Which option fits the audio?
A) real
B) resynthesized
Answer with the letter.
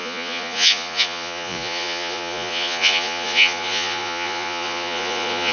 B